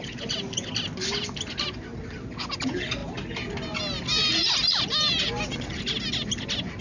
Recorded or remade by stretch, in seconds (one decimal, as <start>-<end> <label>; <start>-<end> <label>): 0.0-6.8 recorded